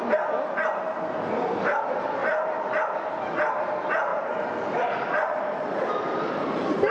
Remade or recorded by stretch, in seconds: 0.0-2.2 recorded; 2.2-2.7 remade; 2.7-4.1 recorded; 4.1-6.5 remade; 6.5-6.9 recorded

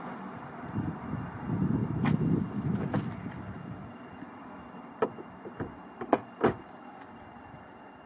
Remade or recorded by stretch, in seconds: 0.0-8.1 remade

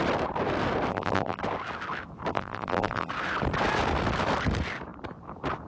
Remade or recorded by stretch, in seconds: 0.0-0.9 recorded; 0.9-1.4 remade; 1.4-2.3 recorded; 2.3-3.1 remade; 3.1-5.7 recorded